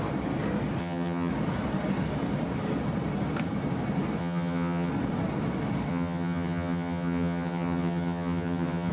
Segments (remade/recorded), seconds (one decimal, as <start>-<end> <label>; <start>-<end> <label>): 0.0-0.8 recorded; 0.8-1.3 remade; 1.3-4.2 recorded; 4.2-4.9 remade; 4.9-5.9 recorded; 5.9-8.9 remade